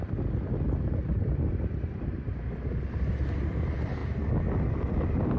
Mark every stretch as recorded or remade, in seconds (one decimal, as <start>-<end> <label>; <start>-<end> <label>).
0.0-1.0 recorded; 1.0-1.5 remade; 1.5-5.4 recorded